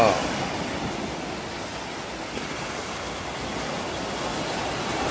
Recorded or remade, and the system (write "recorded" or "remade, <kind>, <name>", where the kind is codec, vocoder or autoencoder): recorded